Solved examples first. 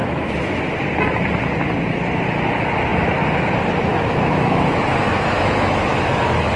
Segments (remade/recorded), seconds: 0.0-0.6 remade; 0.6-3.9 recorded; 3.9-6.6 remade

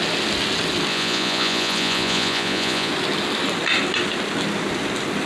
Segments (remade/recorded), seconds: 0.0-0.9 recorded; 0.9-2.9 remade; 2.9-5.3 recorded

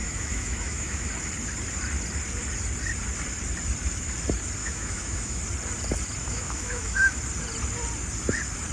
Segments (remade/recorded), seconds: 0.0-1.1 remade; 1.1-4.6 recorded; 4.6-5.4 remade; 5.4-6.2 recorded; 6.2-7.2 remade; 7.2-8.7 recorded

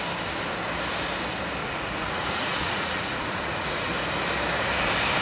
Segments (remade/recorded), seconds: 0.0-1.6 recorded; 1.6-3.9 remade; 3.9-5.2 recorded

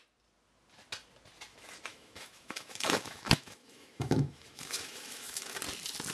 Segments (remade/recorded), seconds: 0.0-1.9 recorded; 1.9-5.6 remade; 5.6-6.1 recorded

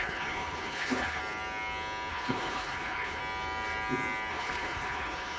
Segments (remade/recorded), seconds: 0.0-1.2 remade; 1.2-2.1 recorded; 2.1-3.2 remade; 3.2-4.3 recorded; 4.3-5.4 remade